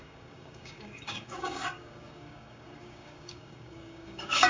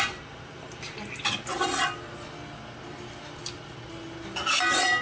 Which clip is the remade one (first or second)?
first